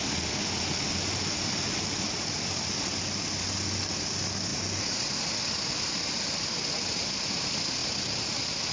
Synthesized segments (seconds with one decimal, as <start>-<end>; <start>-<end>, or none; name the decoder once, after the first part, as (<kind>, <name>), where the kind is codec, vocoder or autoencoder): none